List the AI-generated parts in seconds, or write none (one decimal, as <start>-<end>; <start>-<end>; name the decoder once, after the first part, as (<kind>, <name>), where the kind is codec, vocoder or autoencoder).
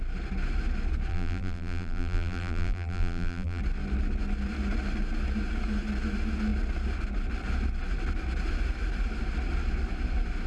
1.1-3.6 (vocoder, BigVGAN v2)